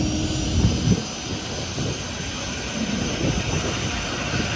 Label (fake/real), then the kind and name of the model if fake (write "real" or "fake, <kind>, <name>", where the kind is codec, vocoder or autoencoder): real